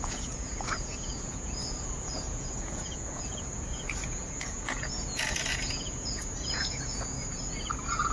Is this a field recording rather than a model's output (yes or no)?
no